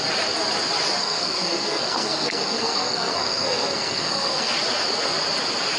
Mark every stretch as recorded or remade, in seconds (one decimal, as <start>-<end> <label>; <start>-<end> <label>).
0.0-1.0 recorded; 1.0-4.5 remade; 4.5-5.8 recorded